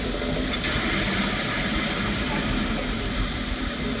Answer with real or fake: real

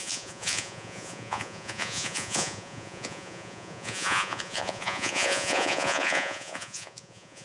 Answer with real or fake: fake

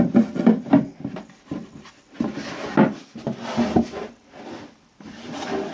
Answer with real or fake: real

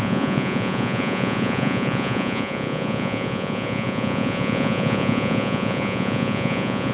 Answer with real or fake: fake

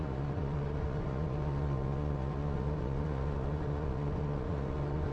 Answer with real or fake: fake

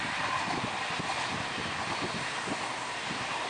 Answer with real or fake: real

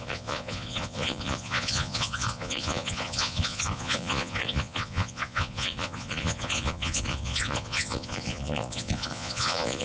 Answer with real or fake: fake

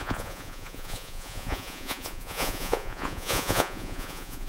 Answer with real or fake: fake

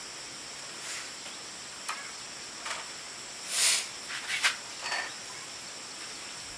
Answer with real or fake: real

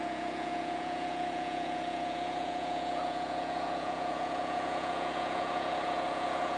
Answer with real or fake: fake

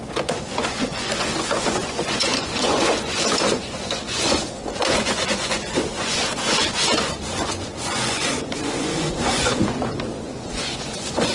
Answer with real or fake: fake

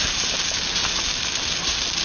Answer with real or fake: real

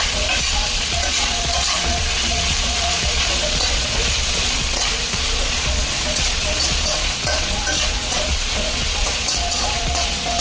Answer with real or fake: fake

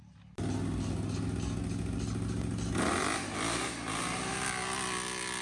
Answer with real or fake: real